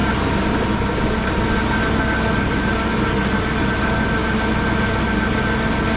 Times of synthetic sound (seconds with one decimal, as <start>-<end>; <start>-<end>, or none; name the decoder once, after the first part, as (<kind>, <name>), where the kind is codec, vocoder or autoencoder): none